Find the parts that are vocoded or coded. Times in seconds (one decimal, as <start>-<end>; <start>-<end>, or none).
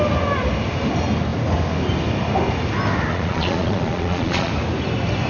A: 3.1-4.5